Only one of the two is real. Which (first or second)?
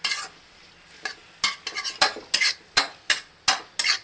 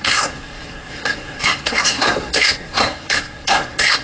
first